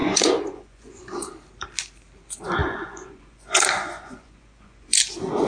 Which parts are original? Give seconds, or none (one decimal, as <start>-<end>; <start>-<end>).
1.3-2.6; 5.0-5.5